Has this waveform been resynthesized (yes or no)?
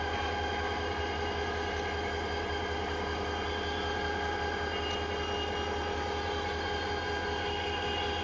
no